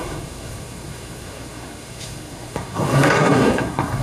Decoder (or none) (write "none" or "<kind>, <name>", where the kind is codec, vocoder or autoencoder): codec, SNAC